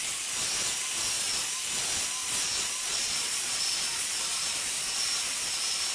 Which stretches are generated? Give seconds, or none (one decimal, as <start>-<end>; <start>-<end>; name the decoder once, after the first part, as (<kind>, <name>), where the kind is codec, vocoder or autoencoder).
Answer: 2.2-4.1 (vocoder, Vocos)